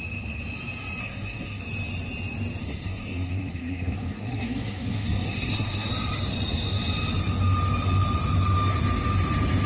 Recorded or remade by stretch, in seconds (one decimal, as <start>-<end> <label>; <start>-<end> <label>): 0.0-1.0 recorded; 1.0-1.6 remade; 1.6-2.6 recorded; 2.6-5.9 remade; 5.9-9.7 recorded